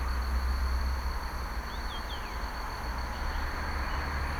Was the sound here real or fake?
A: real